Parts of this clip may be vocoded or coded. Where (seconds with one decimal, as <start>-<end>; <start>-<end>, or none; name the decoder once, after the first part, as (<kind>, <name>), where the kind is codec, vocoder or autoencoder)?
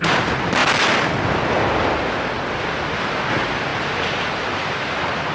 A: 0.0-0.6 (vocoder, BigVGAN v2); 3.3-5.3